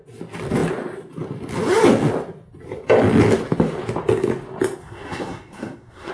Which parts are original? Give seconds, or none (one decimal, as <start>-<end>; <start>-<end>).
0.0-4.8